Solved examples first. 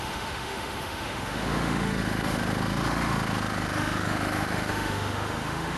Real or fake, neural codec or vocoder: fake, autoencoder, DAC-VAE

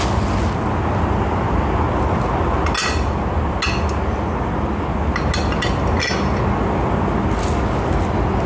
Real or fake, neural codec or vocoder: real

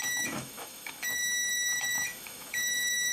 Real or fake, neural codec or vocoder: fake, autoencoder, DAC-VAE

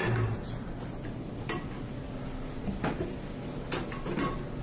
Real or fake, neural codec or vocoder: real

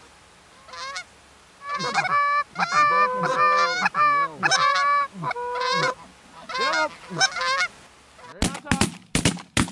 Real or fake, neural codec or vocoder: real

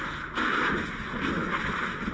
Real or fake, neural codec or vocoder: real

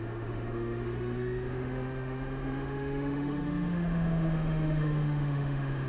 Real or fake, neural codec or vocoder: fake, autoencoder, DAC-VAE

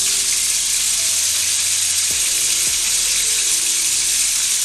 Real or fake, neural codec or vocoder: real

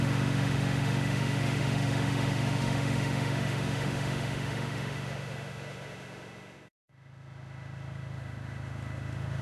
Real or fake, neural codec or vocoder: fake, autoencoder, DAC-VAE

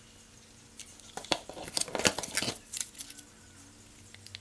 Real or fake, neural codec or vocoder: real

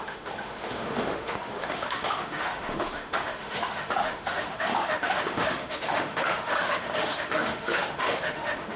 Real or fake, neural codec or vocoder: fake, autoencoder, DAC-VAE